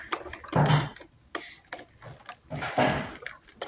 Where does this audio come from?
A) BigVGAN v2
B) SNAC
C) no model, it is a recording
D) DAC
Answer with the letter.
C